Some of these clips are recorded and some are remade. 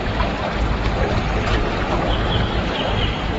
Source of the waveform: recorded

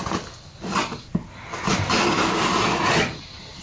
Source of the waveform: remade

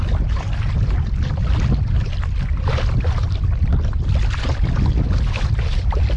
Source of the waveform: remade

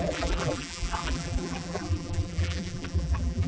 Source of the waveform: remade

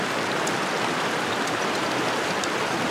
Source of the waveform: recorded